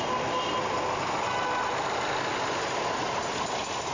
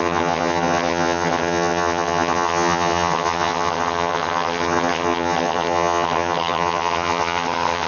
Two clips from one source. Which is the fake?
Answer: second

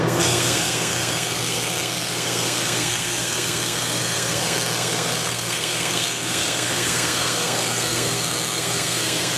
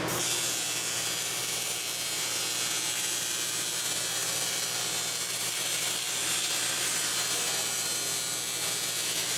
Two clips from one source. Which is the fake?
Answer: first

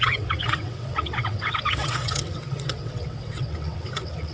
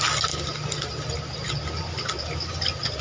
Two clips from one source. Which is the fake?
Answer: first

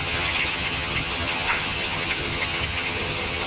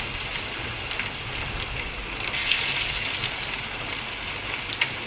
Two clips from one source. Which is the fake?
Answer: first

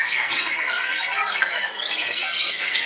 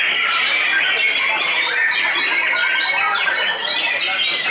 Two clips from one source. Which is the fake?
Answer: first